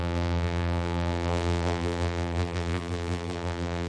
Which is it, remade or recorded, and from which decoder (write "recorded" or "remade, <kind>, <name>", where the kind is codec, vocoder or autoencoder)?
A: remade, vocoder, BigVGAN v2